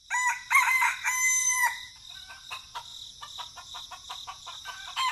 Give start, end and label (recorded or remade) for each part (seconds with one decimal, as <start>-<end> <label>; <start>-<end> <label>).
0.0-1.4 recorded; 1.4-1.9 remade; 1.9-2.9 recorded; 2.9-5.1 remade